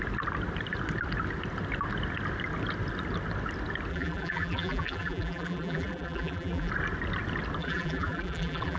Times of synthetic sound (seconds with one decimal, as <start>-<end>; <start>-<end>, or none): 3.9-6.7; 7.6-8.8